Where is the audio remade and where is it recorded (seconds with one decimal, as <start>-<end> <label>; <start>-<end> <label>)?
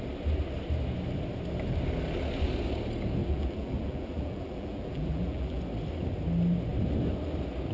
0.0-3.2 recorded; 3.2-5.6 remade; 5.6-7.7 recorded